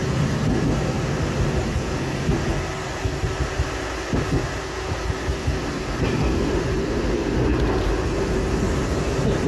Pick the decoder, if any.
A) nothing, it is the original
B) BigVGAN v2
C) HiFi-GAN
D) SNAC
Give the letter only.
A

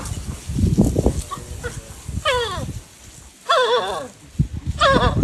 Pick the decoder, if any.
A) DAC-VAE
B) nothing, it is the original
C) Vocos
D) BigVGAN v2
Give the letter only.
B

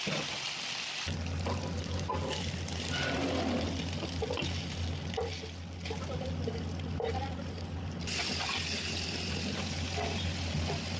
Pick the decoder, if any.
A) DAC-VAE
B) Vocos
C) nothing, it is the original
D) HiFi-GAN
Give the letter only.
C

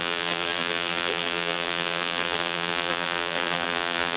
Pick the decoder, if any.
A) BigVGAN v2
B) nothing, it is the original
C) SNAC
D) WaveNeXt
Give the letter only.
A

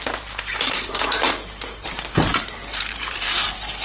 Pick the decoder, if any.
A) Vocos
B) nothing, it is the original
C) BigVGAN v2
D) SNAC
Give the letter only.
C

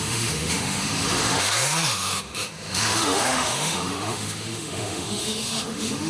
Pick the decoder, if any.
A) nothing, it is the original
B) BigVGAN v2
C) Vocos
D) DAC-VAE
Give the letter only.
D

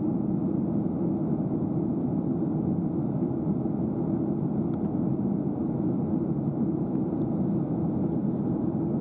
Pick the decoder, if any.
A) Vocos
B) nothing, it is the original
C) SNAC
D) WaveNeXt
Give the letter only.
B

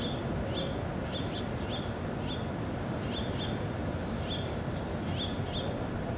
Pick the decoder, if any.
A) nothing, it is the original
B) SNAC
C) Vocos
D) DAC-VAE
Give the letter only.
A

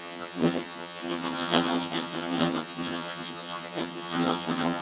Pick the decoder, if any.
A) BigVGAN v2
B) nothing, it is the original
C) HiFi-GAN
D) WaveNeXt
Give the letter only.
C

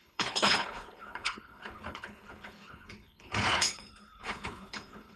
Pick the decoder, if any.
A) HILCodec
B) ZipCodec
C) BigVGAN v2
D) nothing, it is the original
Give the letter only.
A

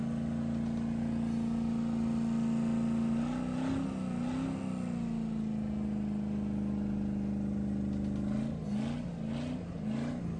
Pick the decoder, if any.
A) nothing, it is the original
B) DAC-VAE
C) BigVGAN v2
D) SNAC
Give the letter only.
A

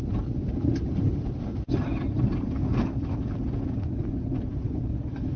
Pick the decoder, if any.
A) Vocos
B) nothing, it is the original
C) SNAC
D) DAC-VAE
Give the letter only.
B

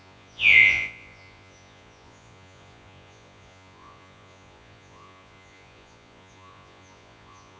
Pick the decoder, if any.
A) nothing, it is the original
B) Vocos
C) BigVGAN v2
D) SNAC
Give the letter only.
B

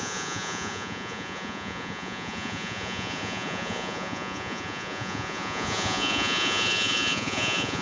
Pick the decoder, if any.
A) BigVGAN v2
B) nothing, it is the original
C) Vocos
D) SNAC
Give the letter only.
C